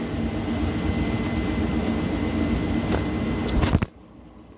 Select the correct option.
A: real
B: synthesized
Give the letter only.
A